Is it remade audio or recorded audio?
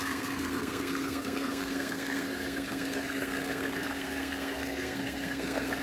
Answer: remade